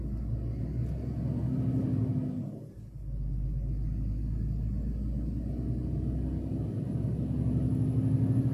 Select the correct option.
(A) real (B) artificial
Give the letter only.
A